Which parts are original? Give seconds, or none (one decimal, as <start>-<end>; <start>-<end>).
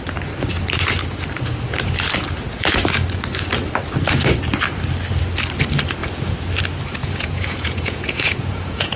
0.0-7.0